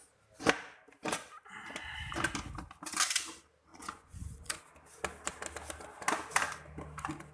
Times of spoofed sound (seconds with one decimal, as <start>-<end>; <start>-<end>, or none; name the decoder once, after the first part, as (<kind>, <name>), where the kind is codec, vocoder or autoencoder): 3.7-4.6 (vocoder, Vocos)